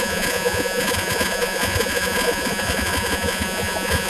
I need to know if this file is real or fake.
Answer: fake